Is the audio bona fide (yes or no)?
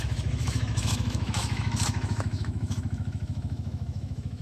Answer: no